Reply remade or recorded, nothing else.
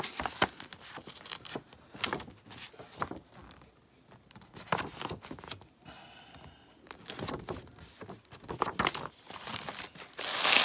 recorded